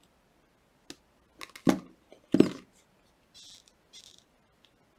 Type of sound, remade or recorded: recorded